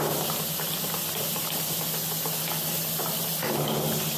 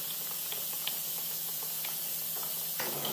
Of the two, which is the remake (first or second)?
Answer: second